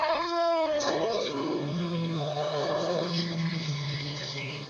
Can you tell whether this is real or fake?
fake